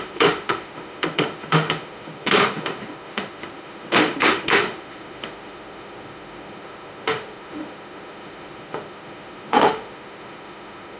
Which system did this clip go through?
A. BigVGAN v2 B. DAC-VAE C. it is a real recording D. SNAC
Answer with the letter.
B